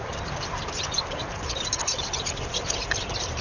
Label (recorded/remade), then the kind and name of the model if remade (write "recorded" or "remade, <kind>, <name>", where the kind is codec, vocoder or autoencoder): remade, vocoder, BigVGAN v2